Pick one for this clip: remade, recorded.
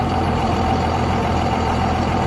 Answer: remade